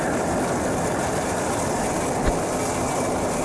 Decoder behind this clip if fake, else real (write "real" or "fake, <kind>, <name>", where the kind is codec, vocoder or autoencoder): real